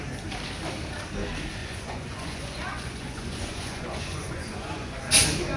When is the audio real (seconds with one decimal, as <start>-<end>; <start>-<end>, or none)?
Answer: 0.0-1.6; 5.0-5.6